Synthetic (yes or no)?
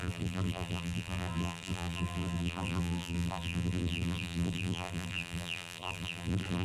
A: yes